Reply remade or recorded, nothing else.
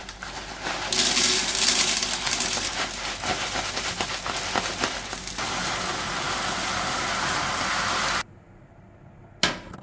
recorded